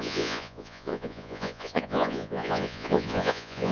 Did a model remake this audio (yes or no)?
yes